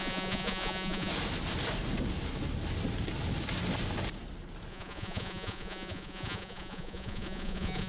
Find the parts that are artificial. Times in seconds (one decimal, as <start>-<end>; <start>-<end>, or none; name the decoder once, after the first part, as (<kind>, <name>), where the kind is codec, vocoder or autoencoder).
0.0-1.1 (vocoder, Vocos); 4.7-7.9